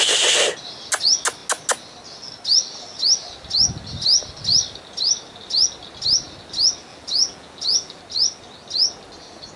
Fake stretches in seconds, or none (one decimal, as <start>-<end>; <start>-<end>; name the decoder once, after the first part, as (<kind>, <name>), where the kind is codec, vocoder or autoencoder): 6.9-8.0 (vocoder, BigVGAN v2)